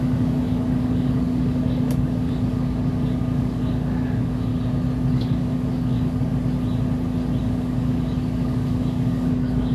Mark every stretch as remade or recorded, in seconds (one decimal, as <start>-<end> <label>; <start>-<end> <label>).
0.0-4.5 remade; 4.5-5.1 recorded; 5.1-6.3 remade; 6.3-7.4 recorded; 7.4-9.7 remade